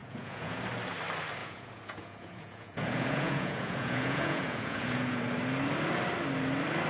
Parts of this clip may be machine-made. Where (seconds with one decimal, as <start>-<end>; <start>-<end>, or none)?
0.0-0.6; 1.4-5.2